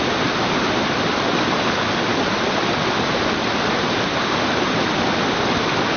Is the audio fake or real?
real